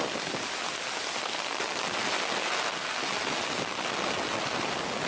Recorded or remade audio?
recorded